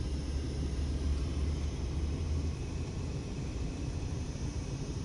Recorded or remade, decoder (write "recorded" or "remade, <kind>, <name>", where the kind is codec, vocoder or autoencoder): remade, vocoder, BigVGAN v2